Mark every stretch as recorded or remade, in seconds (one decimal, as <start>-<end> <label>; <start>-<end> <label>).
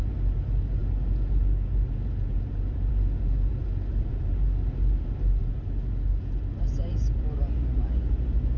0.0-8.6 recorded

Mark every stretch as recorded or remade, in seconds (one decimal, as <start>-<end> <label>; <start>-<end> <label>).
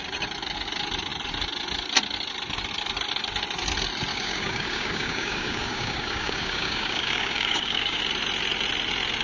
0.0-4.1 recorded; 4.1-8.0 remade; 8.0-9.2 recorded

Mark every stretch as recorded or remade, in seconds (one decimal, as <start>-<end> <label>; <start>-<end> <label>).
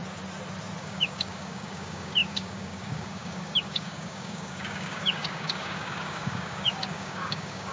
0.0-0.8 recorded; 0.8-7.7 remade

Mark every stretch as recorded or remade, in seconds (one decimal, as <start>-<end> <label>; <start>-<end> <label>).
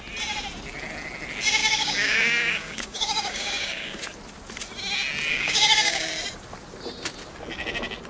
0.0-1.6 recorded; 1.6-4.0 remade; 4.0-5.3 recorded; 5.3-6.1 remade; 6.1-8.1 recorded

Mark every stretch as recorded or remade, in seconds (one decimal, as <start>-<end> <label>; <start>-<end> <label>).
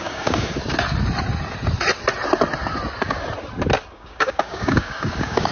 0.0-0.6 remade; 0.6-3.9 recorded; 3.9-5.5 remade